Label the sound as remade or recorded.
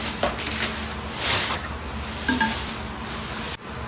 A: recorded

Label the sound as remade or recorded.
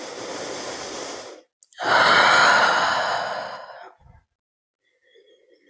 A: recorded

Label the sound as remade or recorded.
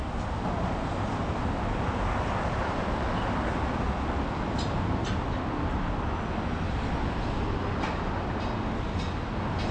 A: recorded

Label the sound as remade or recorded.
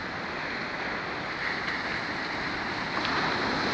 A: recorded